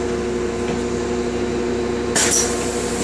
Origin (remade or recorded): recorded